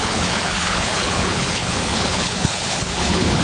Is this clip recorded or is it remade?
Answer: remade